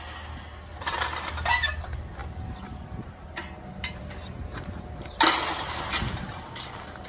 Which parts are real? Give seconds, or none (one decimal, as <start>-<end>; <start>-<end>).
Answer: 0.0-0.7; 1.3-2.2; 6.5-7.1